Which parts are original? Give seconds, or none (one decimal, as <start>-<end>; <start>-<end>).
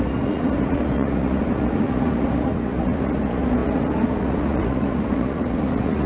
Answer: none